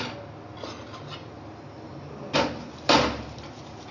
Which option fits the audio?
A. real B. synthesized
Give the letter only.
A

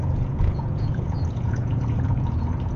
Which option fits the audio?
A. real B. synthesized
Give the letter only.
B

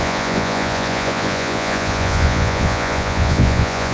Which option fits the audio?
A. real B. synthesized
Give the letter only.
B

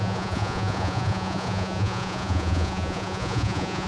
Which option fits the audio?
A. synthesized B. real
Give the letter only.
A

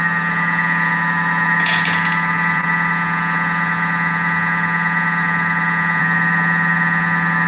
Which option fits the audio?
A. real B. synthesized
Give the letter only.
B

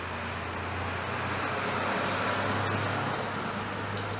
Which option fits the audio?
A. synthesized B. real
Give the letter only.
B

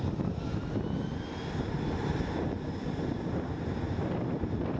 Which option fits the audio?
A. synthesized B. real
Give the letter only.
B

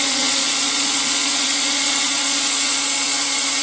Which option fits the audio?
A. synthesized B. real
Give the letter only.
A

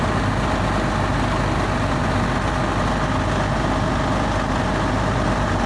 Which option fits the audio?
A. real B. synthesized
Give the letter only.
A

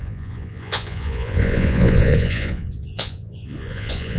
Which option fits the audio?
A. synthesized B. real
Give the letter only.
A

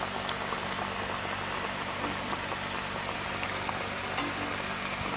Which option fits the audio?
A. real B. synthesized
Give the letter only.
A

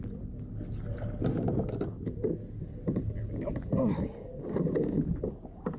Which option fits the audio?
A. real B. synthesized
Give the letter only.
A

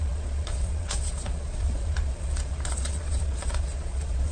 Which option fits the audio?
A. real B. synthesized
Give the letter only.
B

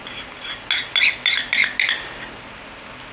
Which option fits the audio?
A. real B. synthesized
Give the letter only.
A